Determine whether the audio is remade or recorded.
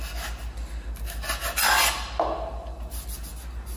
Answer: recorded